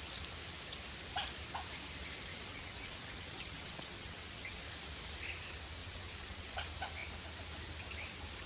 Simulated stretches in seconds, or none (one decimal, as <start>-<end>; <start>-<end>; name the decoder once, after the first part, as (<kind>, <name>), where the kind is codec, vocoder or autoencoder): 2.3-4.6 (vocoder, WaveNeXt); 5.8-6.6